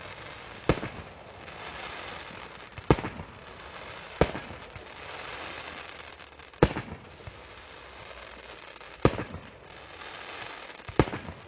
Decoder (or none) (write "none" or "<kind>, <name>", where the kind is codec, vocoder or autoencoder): none